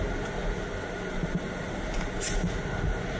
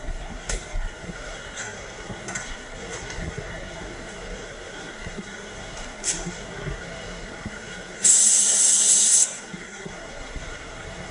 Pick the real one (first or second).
first